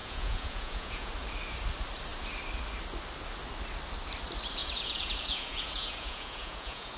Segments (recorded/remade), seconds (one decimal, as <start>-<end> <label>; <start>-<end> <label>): 0.0-1.1 remade; 1.1-4.6 recorded; 4.6-7.0 remade